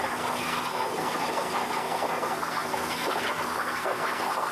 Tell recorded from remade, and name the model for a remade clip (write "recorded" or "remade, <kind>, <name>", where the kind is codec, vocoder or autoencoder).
remade, codec, SNAC